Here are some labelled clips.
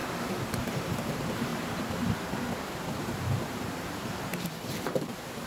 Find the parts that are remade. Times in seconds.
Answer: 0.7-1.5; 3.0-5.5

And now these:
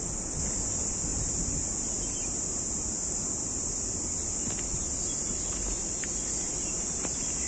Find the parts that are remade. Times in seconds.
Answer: none

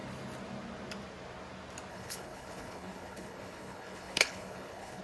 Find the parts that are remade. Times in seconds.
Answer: 1.9-5.0

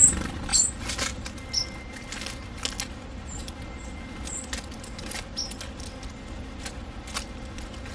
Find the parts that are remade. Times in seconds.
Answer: none

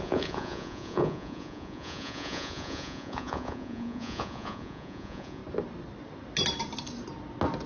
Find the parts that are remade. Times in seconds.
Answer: 0.0-5.4

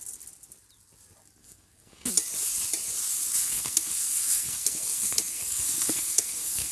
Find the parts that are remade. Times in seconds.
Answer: 1.4-2.1; 3.4-6.7

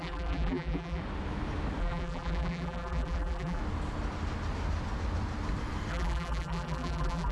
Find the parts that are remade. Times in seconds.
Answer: 0.0-1.0; 1.8-3.6; 5.9-7.3

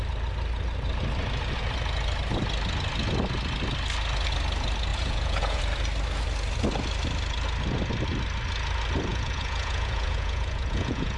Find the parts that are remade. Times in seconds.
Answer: 4.9-5.6; 9.1-11.2